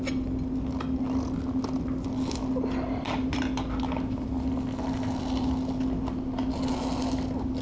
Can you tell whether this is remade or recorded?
recorded